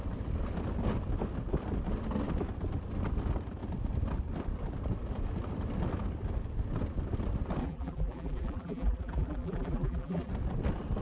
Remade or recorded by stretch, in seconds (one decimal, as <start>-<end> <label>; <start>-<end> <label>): 0.0-7.6 recorded; 7.6-10.3 remade; 10.3-11.0 recorded